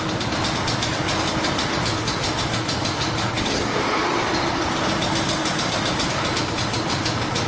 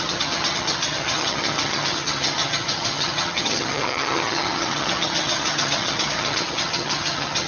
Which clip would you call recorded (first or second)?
first